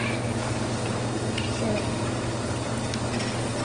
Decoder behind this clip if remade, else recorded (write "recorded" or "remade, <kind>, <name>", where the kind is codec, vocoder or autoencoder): recorded